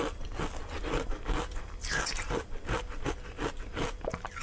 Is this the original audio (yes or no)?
yes